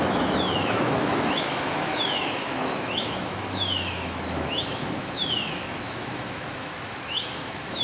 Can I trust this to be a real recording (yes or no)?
no